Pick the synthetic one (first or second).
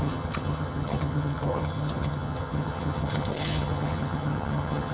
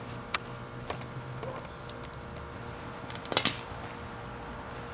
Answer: first